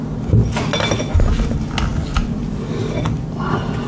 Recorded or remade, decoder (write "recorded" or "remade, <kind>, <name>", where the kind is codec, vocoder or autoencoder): recorded